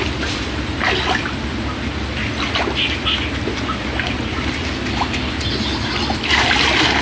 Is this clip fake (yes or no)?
no